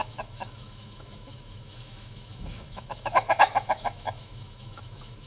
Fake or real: fake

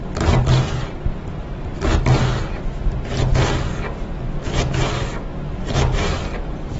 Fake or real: real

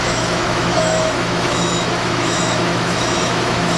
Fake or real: fake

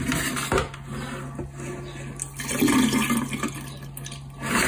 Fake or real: real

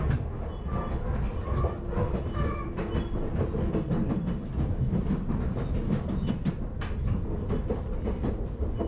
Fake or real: real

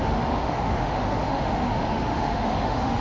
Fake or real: fake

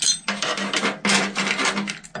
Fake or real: real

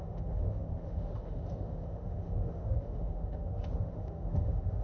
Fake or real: fake